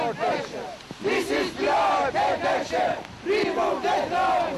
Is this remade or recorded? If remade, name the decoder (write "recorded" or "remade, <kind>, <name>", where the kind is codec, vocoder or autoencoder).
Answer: recorded